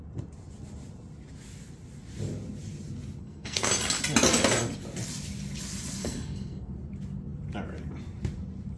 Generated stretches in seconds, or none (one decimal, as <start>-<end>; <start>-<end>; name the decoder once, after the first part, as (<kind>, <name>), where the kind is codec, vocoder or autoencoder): 3.2-3.7 (codec, SNAC); 6.0-6.7